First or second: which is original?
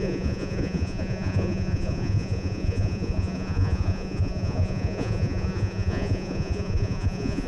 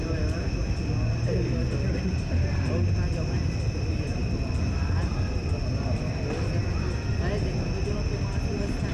second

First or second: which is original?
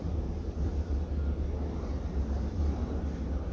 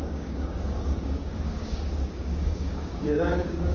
first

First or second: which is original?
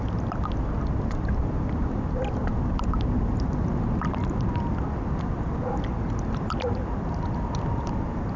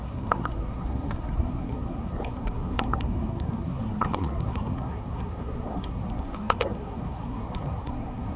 first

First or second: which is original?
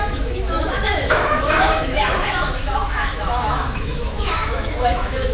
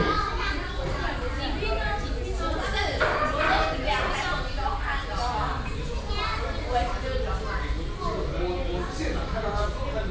second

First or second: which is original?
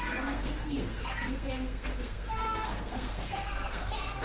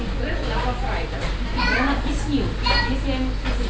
second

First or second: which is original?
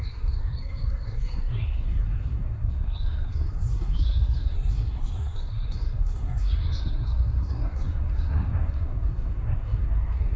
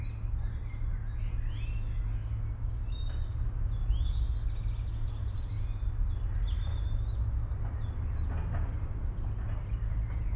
second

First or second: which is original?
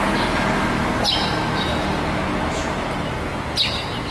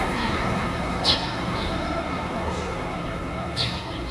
first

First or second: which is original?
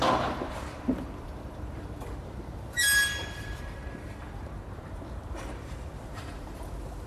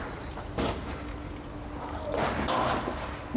second